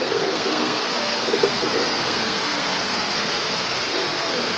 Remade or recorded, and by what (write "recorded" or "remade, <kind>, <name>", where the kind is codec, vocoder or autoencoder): remade, codec, SNAC